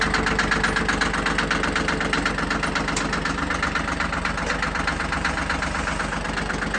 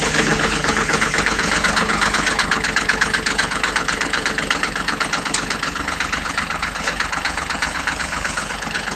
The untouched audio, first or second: first